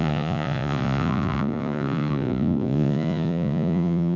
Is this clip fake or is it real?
fake